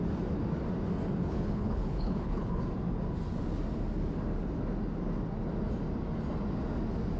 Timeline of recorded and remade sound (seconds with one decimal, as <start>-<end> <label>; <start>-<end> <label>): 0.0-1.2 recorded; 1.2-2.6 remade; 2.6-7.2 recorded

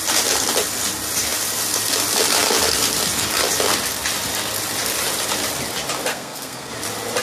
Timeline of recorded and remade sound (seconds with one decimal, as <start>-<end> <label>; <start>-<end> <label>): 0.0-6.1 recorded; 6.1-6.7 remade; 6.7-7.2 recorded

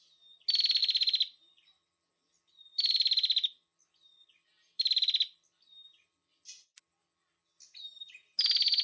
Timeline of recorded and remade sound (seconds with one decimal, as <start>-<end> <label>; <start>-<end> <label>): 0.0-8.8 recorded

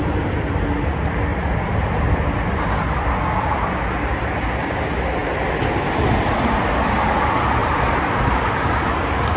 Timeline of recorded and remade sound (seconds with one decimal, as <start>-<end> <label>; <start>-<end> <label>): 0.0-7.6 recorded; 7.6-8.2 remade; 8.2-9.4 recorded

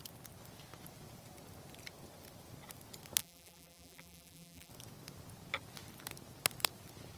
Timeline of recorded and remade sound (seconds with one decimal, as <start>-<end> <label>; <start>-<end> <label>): 0.0-3.2 recorded; 3.2-4.7 remade; 4.7-7.2 recorded

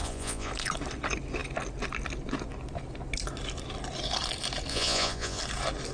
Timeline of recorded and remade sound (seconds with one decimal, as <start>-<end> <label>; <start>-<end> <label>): 0.0-0.5 remade; 0.5-4.7 recorded; 4.7-5.4 remade; 5.4-5.9 recorded

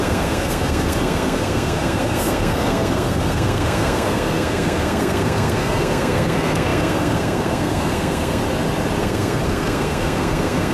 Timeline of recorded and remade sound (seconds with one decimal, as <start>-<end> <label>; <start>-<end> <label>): 0.0-8.4 remade; 8.4-9.0 recorded; 9.0-10.7 remade